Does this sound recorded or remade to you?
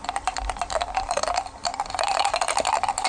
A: remade